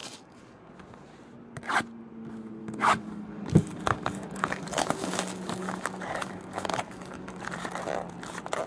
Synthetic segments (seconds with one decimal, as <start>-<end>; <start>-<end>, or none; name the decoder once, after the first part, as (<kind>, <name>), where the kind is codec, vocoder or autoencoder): 0.0-0.7 (codec, DAC); 2.6-7.4